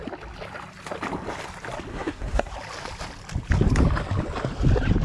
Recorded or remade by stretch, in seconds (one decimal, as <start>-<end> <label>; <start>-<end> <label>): 0.0-1.9 recorded; 1.9-2.5 remade; 2.5-5.0 recorded